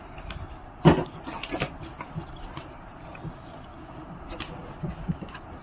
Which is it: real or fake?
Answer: real